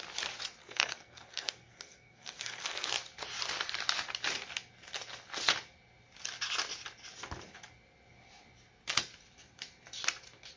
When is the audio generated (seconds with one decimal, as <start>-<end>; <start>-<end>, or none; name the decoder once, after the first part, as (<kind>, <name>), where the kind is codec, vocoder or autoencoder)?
0.6-2.9 (codec, SNAC)